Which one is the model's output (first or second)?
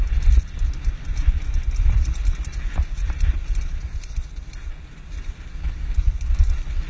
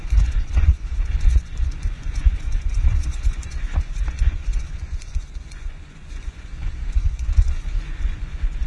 second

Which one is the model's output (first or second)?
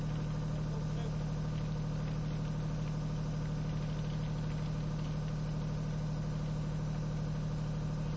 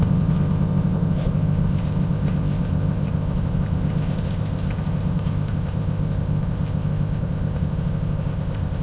second